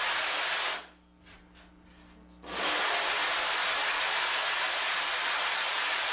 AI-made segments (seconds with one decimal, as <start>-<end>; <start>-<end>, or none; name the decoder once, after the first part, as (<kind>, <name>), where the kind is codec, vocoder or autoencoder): none